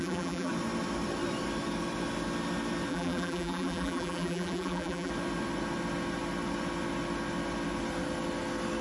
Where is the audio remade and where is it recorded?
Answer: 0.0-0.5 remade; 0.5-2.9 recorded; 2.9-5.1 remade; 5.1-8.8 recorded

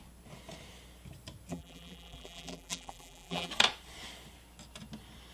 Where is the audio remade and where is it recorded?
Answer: 0.0-1.5 recorded; 1.5-3.5 remade; 3.5-5.3 recorded

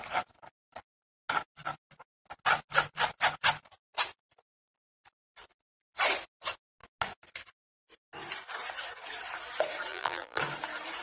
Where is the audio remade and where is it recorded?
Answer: 0.0-9.9 recorded; 9.9-10.4 remade; 10.4-11.0 recorded

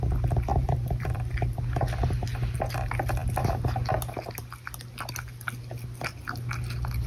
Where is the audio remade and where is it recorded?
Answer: 0.0-0.5 recorded; 0.5-1.6 remade; 1.6-7.1 recorded

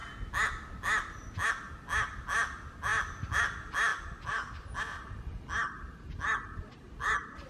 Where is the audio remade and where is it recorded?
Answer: 0.0-7.5 recorded

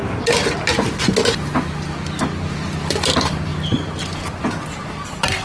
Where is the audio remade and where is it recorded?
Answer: 0.0-2.5 recorded; 2.5-3.5 remade; 3.5-4.3 recorded; 4.3-5.4 remade

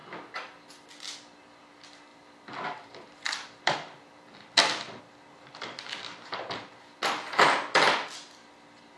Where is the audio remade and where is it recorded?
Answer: 0.0-2.1 recorded; 2.1-5.0 remade; 5.0-9.0 recorded

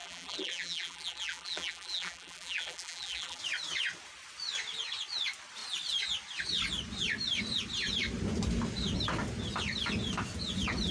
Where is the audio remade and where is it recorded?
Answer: 0.0-3.4 remade; 3.4-10.9 recorded